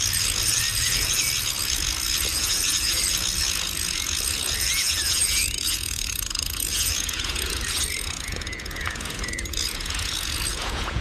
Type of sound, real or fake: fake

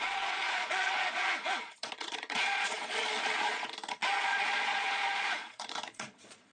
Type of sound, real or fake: fake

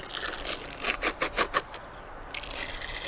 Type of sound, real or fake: real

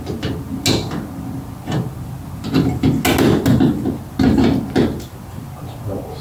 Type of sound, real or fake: real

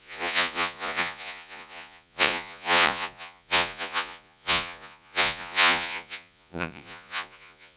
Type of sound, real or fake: fake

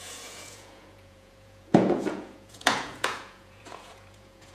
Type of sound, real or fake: fake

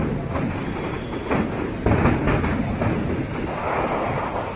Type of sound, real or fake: real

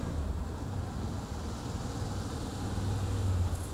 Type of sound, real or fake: real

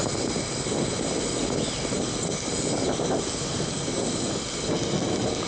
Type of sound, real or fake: real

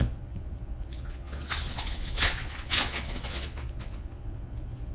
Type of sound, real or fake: fake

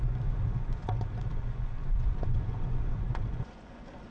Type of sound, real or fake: fake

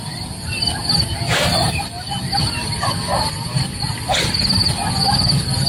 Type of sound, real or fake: real